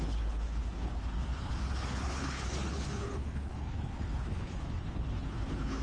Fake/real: fake